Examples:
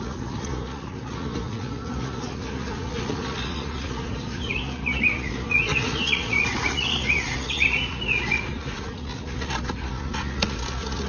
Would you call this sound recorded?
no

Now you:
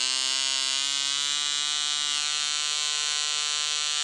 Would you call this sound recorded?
yes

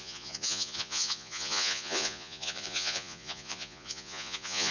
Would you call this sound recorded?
no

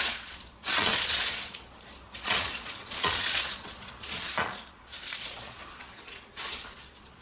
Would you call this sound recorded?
no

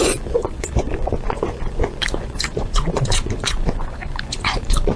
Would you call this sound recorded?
no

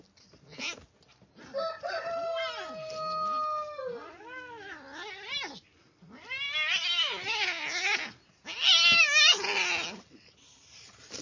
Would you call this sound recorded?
yes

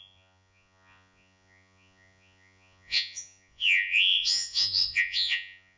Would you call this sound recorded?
no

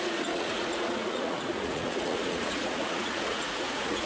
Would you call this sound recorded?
no